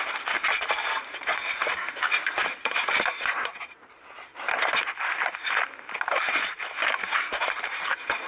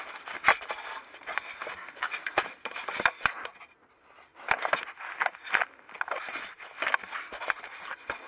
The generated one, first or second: first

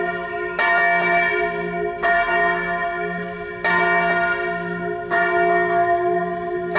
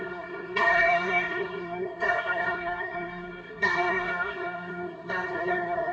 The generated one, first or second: second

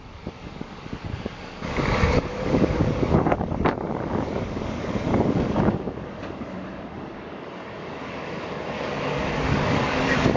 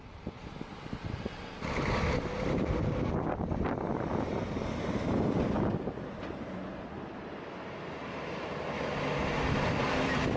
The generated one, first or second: first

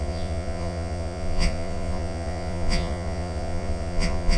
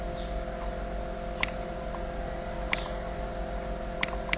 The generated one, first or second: first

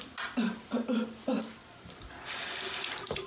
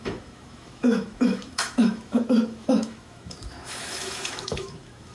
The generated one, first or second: second